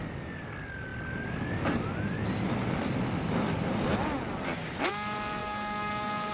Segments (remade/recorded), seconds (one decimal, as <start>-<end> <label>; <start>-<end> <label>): 0.0-5.4 recorded; 5.4-6.3 remade